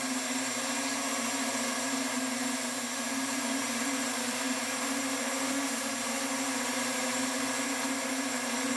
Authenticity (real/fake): fake